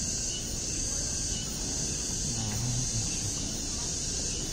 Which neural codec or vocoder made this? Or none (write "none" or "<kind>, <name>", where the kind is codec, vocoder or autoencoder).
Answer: none